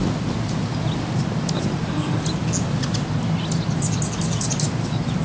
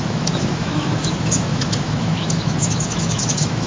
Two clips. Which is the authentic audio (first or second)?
first